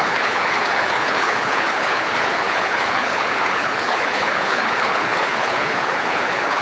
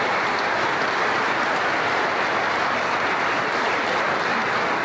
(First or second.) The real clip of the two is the second